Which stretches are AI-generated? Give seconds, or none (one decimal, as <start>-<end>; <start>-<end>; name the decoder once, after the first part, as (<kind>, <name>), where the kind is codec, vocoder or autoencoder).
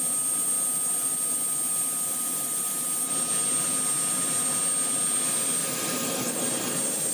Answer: 5.6-6.3 (vocoder, BigVGAN v2)